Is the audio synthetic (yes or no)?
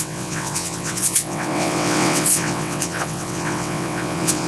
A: yes